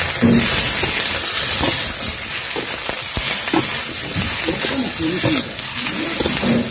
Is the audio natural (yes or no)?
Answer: yes